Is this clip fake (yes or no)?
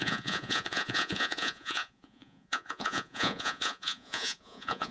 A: yes